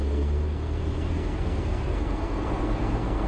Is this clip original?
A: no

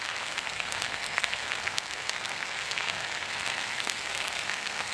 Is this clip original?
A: no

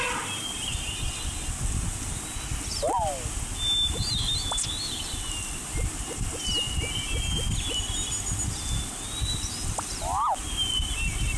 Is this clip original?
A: yes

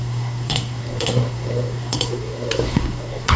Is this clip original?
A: no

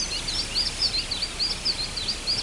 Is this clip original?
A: yes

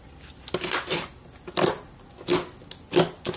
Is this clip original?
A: yes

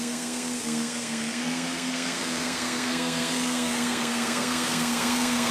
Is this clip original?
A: no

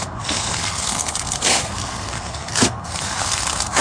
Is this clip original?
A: no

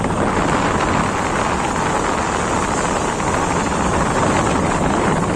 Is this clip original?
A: yes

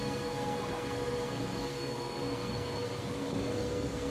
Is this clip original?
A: no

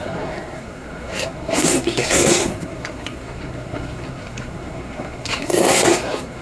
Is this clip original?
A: no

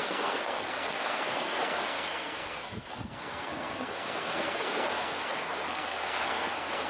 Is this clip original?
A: no